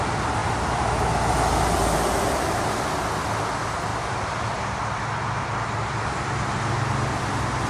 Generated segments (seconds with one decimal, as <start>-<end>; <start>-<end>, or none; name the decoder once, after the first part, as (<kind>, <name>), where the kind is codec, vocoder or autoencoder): 3.9-4.7 (vocoder, BigVGAN v2)